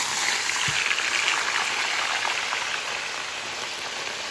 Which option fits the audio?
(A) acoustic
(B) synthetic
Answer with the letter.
A